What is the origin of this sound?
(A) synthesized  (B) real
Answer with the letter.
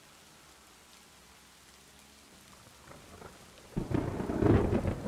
B